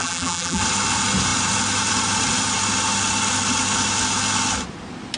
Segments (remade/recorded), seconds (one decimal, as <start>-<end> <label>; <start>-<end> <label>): 0.0-0.6 remade; 0.6-5.2 recorded